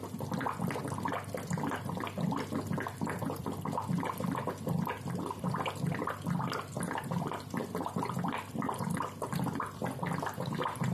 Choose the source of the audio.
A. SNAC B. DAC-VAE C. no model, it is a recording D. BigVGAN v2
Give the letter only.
C